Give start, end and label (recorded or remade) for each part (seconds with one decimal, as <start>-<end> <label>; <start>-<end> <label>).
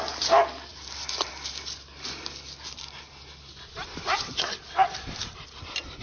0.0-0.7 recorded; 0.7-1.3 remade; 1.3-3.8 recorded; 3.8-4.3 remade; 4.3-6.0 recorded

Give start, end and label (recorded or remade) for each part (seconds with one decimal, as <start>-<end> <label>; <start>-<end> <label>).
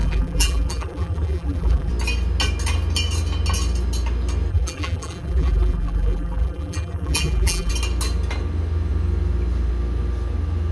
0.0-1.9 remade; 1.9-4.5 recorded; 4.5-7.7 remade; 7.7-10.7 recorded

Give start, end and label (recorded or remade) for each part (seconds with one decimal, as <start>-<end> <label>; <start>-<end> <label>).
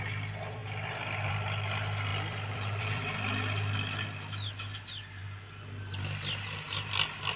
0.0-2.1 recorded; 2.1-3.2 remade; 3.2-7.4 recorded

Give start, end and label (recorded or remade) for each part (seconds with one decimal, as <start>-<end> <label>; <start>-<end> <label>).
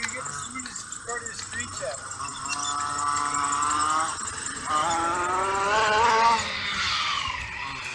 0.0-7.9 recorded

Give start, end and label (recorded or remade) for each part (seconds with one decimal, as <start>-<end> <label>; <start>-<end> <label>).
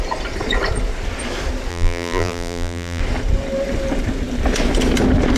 0.0-1.7 recorded; 1.7-3.0 remade; 3.0-5.4 recorded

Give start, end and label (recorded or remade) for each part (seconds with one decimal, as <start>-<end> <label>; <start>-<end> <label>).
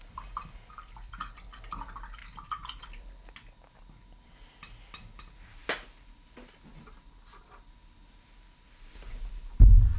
0.0-2.2 recorded; 2.2-2.8 remade; 2.8-10.0 recorded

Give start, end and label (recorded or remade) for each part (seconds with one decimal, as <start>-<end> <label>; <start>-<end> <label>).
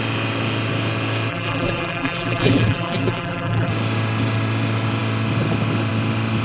0.0-1.3 recorded; 1.3-3.7 remade; 3.7-6.4 recorded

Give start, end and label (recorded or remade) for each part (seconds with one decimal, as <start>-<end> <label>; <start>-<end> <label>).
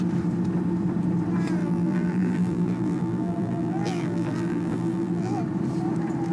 0.0-1.6 recorded; 1.6-5.4 remade; 5.4-6.3 recorded